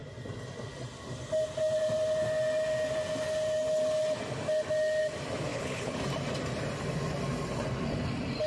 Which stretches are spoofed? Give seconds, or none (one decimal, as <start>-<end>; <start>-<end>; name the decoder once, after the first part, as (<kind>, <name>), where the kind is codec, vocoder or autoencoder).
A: 5.5-6.0 (codec, HILCodec)